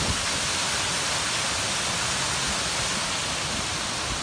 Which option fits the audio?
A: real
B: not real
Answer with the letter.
A